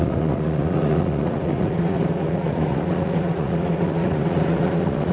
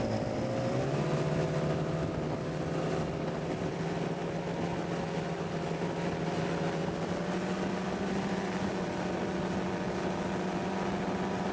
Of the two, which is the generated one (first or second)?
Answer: first